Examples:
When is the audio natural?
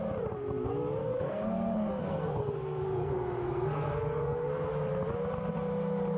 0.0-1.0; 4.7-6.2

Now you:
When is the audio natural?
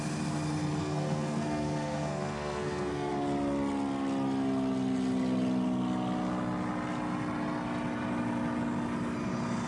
0.0-0.8; 3.1-9.7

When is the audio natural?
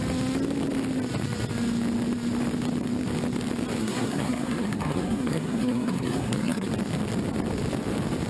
0.0-3.8; 6.7-8.3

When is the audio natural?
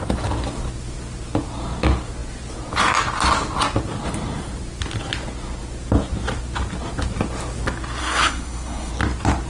0.0-8.0; 8.9-9.5